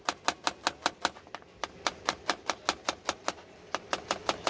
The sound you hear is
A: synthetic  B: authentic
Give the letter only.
B